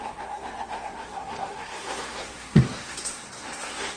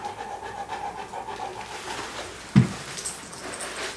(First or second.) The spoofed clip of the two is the first